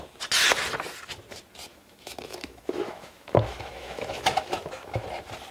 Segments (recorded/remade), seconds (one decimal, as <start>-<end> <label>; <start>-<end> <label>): 0.0-1.7 recorded; 1.7-5.0 remade; 5.0-5.5 recorded